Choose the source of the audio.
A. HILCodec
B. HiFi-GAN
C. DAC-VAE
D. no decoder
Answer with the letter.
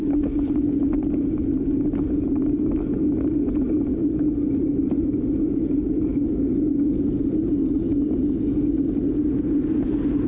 D